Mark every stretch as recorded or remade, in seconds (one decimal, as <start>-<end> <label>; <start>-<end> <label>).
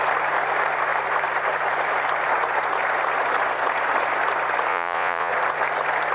0.0-4.7 recorded; 4.7-5.3 remade; 5.3-6.1 recorded